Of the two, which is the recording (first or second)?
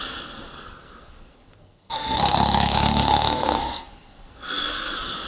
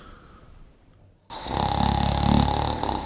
second